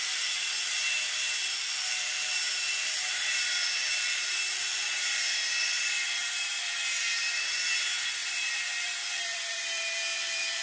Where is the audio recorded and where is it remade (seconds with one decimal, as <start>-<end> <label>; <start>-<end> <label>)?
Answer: 0.0-10.6 remade